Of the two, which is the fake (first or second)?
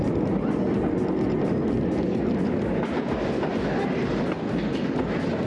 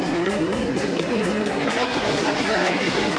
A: second